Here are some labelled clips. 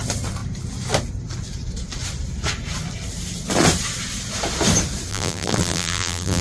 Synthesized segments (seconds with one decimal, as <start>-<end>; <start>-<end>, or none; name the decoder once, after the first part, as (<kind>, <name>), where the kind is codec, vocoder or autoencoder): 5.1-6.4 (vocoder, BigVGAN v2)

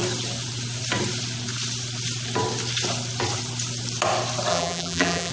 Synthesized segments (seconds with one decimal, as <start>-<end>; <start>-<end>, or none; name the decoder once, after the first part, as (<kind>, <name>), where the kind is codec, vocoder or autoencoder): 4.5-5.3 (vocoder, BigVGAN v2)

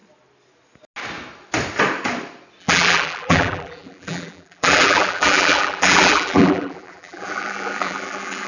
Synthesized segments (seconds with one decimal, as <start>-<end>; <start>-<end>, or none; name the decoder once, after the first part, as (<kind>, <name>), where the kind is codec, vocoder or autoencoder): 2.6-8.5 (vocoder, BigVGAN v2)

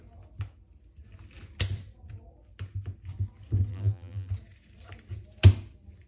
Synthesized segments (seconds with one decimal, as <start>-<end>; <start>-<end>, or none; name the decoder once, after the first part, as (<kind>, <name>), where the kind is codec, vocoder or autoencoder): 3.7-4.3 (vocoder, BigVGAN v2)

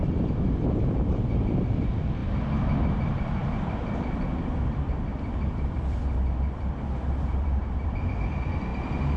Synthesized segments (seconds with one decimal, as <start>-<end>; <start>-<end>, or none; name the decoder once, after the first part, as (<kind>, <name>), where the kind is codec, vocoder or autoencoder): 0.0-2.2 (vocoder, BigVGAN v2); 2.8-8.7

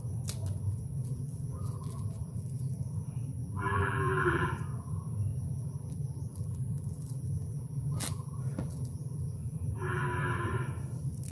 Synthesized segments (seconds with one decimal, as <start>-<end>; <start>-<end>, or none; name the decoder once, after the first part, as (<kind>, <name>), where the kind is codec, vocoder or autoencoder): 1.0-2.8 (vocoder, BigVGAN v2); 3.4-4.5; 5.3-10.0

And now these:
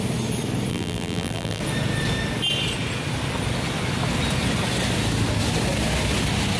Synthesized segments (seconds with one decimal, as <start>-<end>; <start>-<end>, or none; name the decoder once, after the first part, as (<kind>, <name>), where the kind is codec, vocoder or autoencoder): 0.7-1.6 (vocoder, BigVGAN v2)